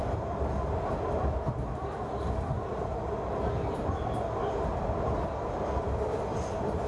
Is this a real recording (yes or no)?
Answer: yes